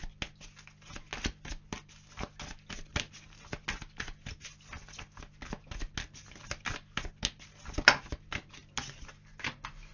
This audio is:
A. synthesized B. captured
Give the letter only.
B